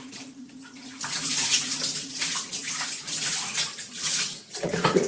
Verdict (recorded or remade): remade